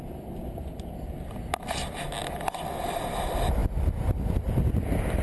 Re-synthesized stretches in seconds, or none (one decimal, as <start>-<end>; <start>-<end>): none